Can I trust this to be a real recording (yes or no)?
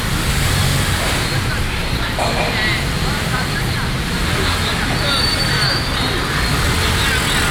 yes